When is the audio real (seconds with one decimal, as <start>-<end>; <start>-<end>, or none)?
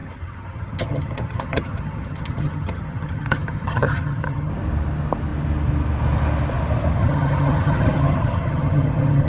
4.5-7.0